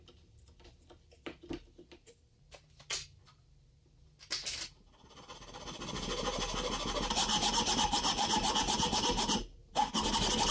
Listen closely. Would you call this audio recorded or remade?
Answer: recorded